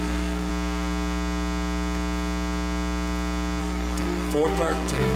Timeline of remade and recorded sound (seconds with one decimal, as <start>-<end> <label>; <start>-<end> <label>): 0.0-0.5 remade; 0.5-3.6 recorded; 3.6-5.2 remade